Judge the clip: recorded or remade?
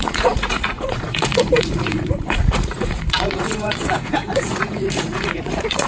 remade